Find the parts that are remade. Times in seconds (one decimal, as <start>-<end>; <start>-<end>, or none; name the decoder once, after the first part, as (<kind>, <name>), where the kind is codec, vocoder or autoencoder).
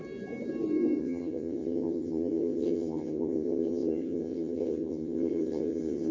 1.0-6.1 (vocoder, HiFi-GAN)